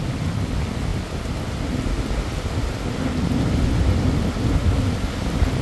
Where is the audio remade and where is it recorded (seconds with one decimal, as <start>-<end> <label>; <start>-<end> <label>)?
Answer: 0.0-5.6 recorded